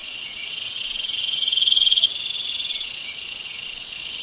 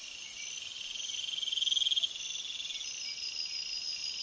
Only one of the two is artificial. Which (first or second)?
first